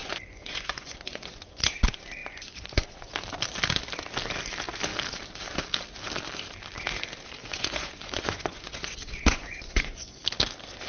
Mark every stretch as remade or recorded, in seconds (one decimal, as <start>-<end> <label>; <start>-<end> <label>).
0.0-1.7 remade; 1.7-2.2 recorded; 2.2-3.1 remade; 3.1-7.4 recorded; 7.4-10.2 remade; 10.2-10.9 recorded